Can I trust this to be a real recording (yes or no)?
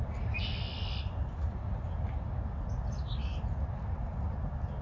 yes